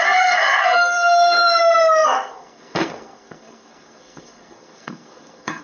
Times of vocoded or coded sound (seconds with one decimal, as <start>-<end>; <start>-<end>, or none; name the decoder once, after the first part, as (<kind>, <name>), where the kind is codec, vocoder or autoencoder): 0.0-5.6 (codec, SNAC)